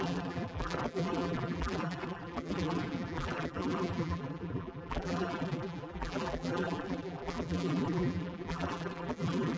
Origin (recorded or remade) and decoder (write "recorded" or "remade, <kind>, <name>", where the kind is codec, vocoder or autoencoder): remade, vocoder, BigVGAN v2